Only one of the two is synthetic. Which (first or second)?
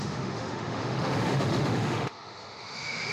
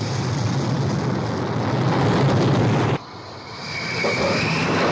first